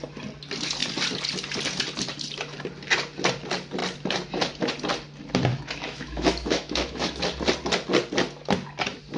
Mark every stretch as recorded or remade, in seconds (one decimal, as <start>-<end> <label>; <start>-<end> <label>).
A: 0.0-5.5 recorded; 5.5-7.2 remade; 7.2-9.2 recorded